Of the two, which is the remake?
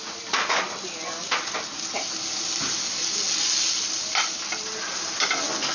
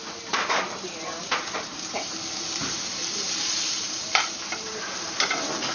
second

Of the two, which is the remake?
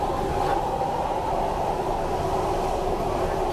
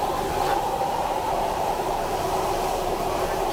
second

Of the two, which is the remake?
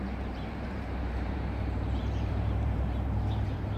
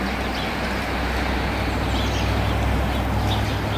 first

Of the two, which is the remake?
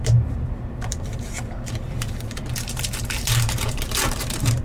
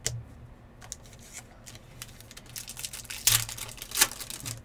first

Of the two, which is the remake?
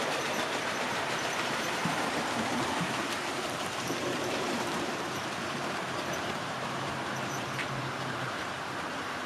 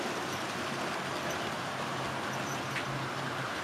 first